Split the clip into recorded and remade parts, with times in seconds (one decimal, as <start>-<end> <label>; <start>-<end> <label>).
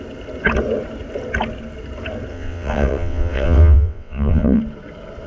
0.0-2.3 recorded; 2.3-4.6 remade; 4.6-5.3 recorded